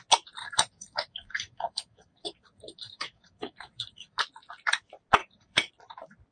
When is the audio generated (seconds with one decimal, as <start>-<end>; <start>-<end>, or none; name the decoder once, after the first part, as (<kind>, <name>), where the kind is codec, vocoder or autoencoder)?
0.4-4.2 (codec, DAC); 5.2-5.7